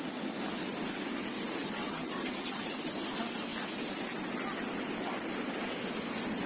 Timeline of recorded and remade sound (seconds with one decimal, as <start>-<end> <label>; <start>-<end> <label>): 0.0-1.8 recorded; 1.8-2.9 remade; 2.9-6.5 recorded